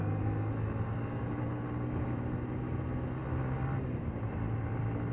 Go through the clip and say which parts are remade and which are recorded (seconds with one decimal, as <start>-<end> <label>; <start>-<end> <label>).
0.0-5.1 recorded